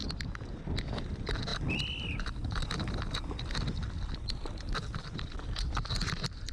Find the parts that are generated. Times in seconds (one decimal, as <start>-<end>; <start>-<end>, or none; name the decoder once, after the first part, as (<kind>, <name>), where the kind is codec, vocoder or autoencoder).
none